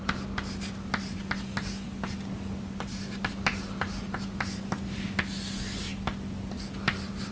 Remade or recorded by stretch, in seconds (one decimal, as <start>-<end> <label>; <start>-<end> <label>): 0.0-7.3 recorded